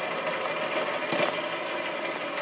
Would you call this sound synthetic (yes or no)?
no